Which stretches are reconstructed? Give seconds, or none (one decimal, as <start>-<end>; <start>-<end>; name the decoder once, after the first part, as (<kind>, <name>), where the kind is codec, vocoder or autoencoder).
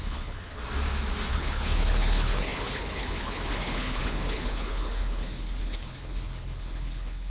0.0-0.6 (codec, HILCodec); 1.3-7.3